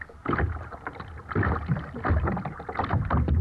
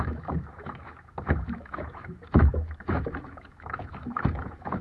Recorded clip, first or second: first